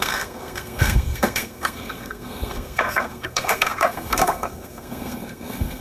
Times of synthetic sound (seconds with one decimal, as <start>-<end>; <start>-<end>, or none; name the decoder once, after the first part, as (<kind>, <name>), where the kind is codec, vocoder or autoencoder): 0.0-5.8 (codec, SNAC)